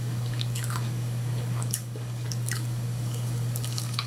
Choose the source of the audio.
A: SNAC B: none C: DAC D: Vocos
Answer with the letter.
C